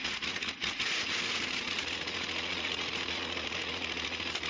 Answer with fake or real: fake